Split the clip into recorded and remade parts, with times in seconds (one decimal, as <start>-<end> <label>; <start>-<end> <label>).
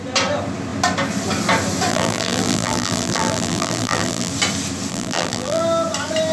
0.0-1.9 recorded; 1.9-4.3 remade; 4.3-4.9 recorded; 4.9-5.6 remade; 5.6-6.3 recorded